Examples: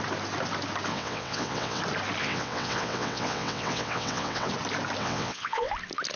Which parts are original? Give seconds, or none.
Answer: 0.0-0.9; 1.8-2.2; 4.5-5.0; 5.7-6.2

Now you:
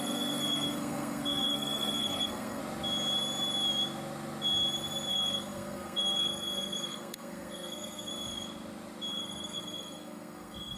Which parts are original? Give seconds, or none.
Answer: 2.6-5.1; 8.1-9.1

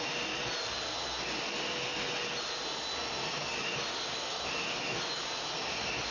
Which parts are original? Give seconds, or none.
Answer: 0.0-6.1

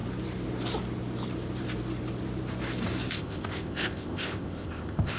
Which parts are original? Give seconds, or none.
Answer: 0.0-3.1

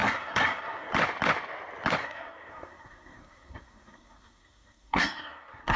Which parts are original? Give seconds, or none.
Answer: 0.9-2.0